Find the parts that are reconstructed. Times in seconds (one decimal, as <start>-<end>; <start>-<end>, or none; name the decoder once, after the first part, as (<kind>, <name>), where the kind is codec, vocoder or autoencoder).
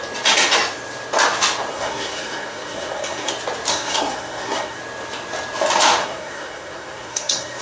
1.7-3.3 (codec, SNAC); 3.7-4.8; 6.0-7.6